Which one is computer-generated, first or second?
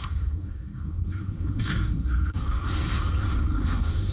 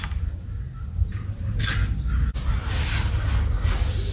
first